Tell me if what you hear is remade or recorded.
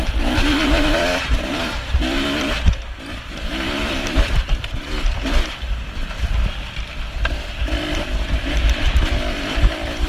remade